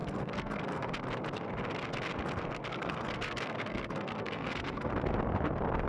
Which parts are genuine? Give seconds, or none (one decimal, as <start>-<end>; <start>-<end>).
0.9-2.7; 4.9-5.9

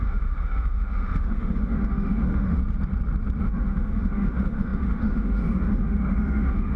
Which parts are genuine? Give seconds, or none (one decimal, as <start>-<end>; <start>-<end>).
2.6-3.4

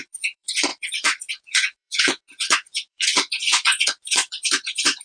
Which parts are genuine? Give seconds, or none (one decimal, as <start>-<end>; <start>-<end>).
none

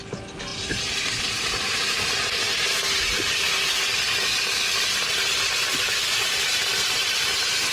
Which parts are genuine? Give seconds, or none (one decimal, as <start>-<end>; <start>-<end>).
0.0-0.5; 3.5-5.7; 7.2-7.7

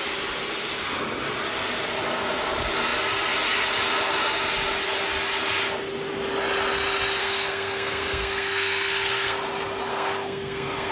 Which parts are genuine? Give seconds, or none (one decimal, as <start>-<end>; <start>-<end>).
0.0-7.2; 9.4-9.9

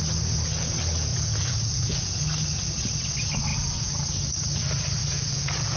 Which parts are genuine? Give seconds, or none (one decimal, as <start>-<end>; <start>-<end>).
0.0-1.1; 2.2-3.5; 4.0-5.0